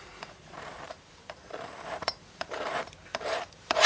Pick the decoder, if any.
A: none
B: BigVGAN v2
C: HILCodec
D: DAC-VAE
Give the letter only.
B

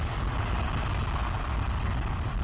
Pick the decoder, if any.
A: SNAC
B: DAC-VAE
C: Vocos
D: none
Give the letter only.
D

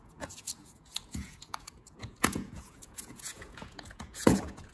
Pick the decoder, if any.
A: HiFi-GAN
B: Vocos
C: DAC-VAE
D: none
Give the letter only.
B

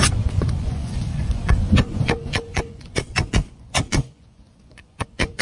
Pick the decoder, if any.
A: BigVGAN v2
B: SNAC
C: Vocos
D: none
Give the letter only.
C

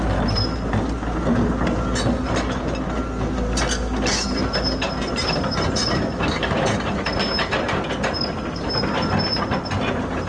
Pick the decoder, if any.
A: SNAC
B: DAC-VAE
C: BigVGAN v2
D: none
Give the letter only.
D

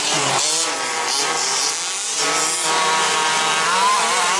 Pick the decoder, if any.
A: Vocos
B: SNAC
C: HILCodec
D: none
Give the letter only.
D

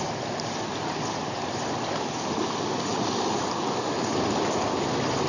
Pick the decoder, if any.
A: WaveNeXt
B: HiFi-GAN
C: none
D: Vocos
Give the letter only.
C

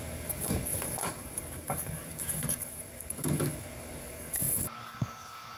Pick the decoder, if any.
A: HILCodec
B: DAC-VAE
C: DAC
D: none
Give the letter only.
C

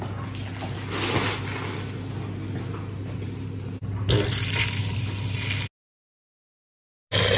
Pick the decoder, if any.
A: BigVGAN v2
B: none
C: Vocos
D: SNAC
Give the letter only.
B